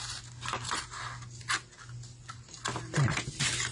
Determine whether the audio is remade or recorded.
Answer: recorded